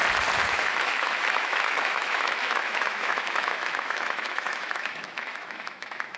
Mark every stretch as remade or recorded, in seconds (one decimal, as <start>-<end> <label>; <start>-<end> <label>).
0.0-0.5 recorded; 0.5-6.2 remade